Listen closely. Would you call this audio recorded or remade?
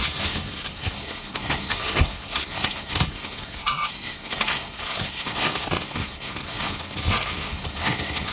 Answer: remade